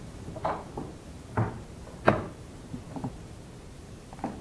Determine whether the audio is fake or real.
fake